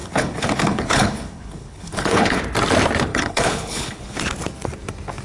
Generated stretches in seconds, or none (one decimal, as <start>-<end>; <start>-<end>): 0.0-2.4; 3.1-4.2